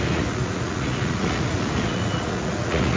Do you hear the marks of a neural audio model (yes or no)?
yes